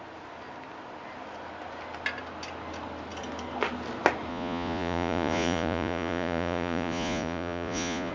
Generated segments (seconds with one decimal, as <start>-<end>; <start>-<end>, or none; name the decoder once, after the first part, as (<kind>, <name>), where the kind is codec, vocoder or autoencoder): 4.3-8.1 (vocoder, Vocos)